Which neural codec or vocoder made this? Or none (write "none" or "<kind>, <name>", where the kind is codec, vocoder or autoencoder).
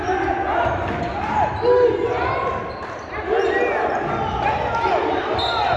none